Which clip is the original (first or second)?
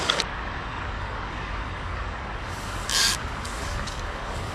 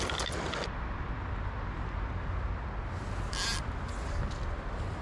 second